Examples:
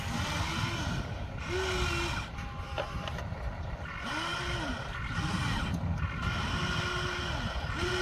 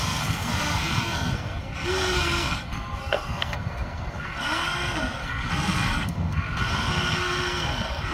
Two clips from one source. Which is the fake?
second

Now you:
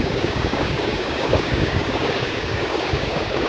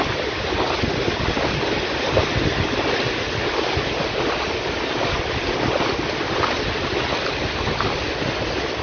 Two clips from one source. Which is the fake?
first